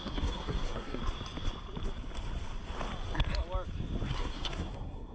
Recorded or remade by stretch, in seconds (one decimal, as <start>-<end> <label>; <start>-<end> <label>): 0.0-1.0 remade; 1.0-4.1 recorded; 4.1-5.1 remade